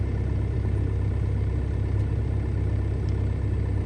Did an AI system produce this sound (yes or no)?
no